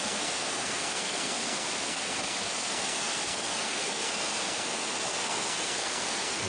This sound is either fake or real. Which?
fake